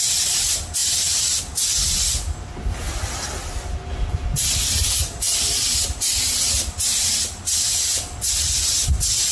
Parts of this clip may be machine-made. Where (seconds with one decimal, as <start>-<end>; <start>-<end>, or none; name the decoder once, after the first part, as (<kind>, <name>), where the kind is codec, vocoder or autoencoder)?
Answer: none